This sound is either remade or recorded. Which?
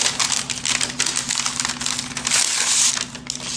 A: recorded